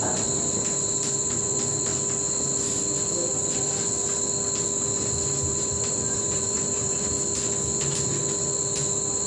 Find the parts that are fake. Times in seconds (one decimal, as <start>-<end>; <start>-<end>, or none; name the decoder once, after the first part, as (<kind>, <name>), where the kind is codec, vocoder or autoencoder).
5.5-7.1 (vocoder, BigVGAN v2)